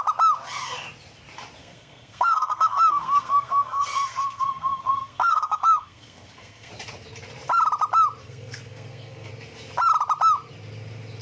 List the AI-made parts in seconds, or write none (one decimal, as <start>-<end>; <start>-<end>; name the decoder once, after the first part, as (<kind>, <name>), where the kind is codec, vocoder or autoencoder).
1.6-6.7 (codec, SNAC); 8.2-9.3